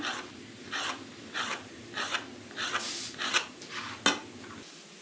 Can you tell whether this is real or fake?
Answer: real